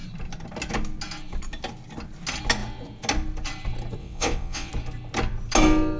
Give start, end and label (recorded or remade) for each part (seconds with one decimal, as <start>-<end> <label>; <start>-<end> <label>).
0.0-4.0 recorded; 4.0-4.7 remade; 4.7-6.0 recorded